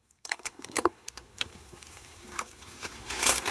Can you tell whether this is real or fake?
fake